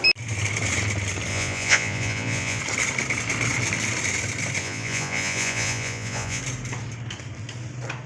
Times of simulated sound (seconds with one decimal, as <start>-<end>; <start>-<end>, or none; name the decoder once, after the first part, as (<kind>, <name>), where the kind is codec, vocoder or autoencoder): 1.3-2.6 (vocoder, Vocos); 4.6-6.4